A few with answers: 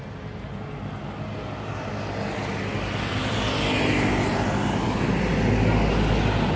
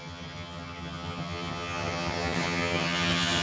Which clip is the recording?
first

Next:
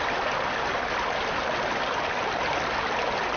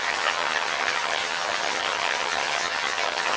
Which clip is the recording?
first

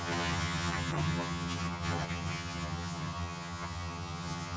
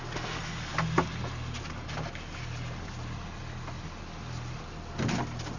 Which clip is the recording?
second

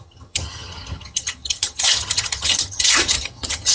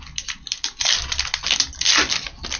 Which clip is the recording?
second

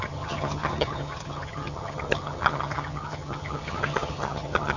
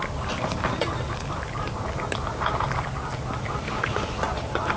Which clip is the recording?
second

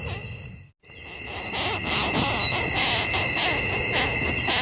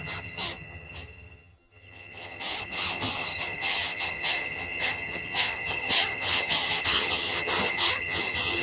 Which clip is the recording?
first